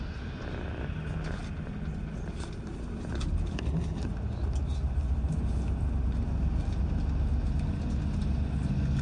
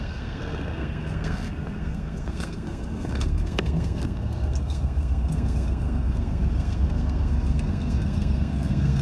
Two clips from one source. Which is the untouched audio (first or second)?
first